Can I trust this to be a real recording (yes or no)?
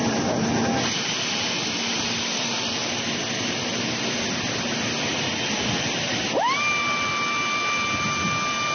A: yes